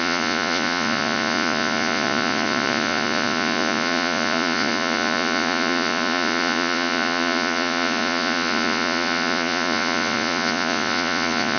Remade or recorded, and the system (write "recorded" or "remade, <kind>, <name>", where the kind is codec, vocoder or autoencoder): remade, vocoder, Vocos